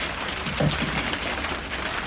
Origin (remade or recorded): recorded